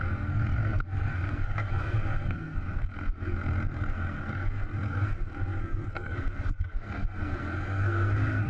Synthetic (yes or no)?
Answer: yes